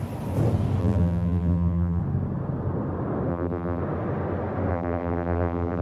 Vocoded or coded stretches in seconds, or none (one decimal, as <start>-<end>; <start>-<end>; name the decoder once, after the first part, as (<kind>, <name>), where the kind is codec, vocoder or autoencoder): 0.8-2.0 (vocoder, BigVGAN v2); 3.3-3.8; 4.7-5.8